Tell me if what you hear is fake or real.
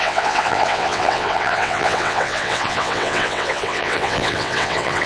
fake